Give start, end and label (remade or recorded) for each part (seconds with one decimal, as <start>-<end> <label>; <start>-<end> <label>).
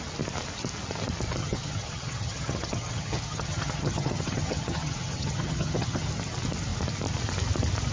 0.0-1.4 recorded; 1.4-6.1 remade; 6.1-7.9 recorded